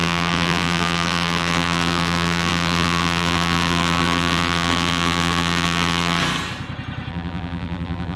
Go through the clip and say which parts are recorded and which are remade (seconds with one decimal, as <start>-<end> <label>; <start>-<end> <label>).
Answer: 0.0-6.2 remade; 6.2-7.1 recorded; 7.1-8.2 remade